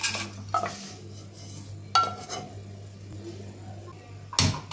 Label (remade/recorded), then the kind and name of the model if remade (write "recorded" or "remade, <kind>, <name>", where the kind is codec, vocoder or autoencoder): recorded